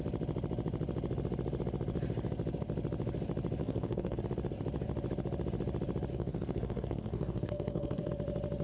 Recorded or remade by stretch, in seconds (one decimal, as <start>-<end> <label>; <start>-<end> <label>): 0.0-3.6 recorded; 3.6-4.2 remade; 4.2-6.1 recorded; 6.1-8.1 remade; 8.1-8.6 recorded